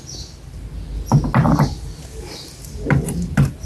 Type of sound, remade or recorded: recorded